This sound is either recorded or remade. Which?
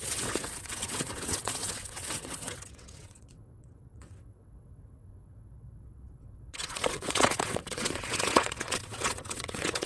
remade